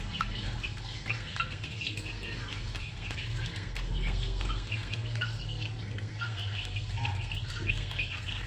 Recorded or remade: remade